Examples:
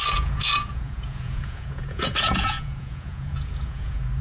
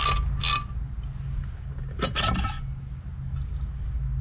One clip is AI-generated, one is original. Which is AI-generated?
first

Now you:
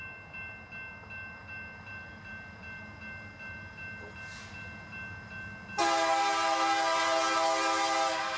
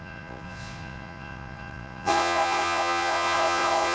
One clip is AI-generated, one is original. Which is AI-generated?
second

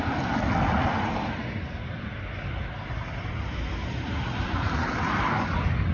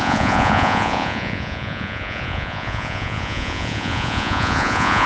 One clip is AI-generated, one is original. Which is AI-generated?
second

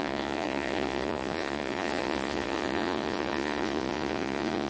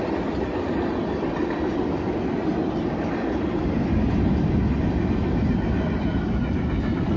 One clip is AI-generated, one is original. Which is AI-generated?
first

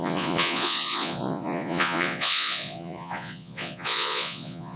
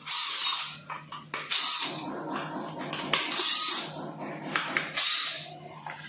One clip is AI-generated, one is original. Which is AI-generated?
first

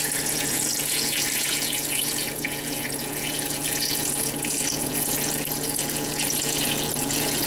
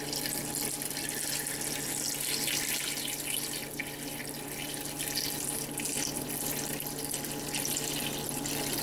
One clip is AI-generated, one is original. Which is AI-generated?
first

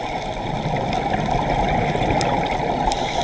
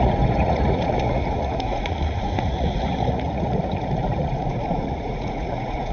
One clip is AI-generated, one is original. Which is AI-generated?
second